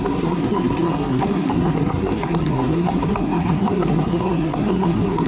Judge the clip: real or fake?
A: fake